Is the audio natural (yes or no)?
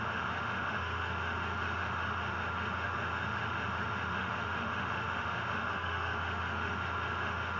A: no